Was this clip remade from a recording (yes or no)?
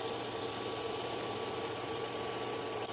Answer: no